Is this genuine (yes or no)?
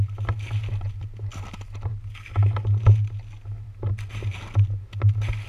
yes